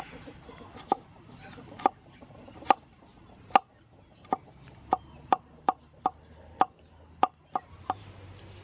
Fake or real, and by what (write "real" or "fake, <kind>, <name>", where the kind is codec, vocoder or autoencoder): real